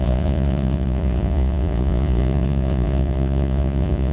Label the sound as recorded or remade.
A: remade